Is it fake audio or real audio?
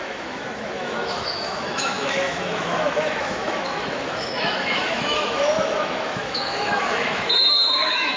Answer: fake